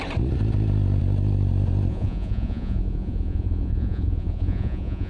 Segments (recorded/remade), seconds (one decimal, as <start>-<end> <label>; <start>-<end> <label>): 0.0-1.9 recorded; 1.9-5.1 remade